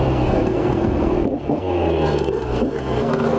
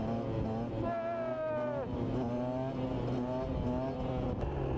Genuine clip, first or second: second